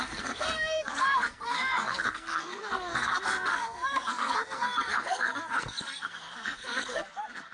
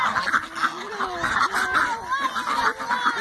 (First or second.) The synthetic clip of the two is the first